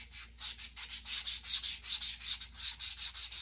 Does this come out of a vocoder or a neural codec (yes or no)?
no